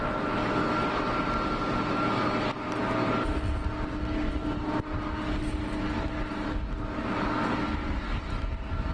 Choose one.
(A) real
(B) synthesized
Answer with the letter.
A